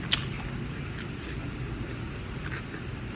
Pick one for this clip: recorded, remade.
recorded